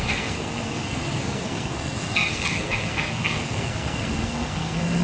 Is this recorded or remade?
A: remade